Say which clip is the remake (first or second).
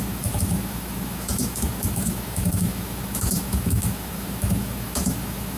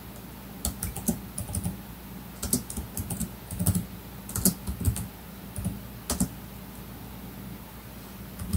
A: first